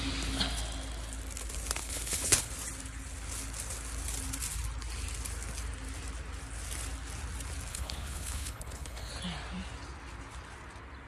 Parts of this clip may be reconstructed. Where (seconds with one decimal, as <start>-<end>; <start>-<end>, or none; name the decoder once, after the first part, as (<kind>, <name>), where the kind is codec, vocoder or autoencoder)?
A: 1.8-2.5 (codec, HILCodec); 7.7-9.1